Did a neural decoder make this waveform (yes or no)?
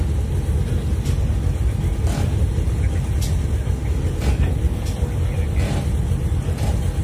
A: no